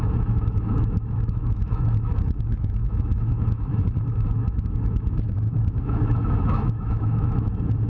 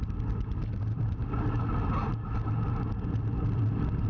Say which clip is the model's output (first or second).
first